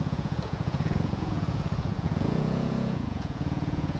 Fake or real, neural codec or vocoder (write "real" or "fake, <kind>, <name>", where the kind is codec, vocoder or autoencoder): fake, vocoder, Vocos